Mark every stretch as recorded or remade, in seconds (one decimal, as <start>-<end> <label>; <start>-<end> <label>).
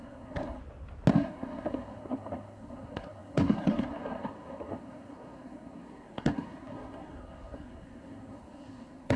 0.0-0.6 remade; 0.6-1.1 recorded; 1.1-9.2 remade